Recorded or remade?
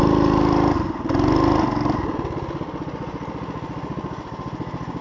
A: recorded